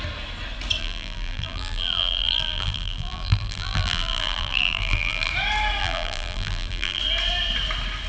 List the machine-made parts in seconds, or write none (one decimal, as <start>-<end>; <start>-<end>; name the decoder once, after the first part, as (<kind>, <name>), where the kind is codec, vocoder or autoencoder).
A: 0.8-5.3 (vocoder, BigVGAN v2); 5.8-7.0